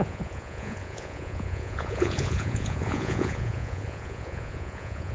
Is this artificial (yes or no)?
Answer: yes